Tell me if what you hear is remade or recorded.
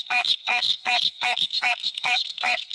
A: remade